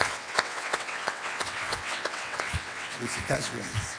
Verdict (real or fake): fake